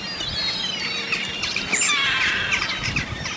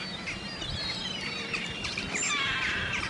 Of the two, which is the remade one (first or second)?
second